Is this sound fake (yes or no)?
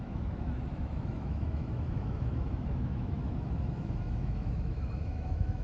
yes